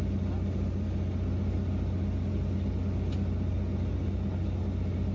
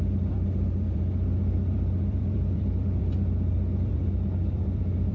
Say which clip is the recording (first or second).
first